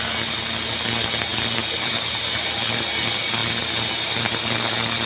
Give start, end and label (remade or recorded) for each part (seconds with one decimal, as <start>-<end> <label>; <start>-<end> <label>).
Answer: 0.0-1.3 recorded; 1.3-2.2 remade; 2.2-5.1 recorded